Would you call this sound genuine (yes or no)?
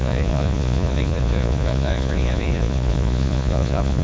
no